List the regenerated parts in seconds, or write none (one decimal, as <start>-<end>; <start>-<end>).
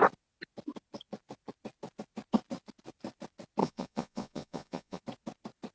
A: 3.6-5.0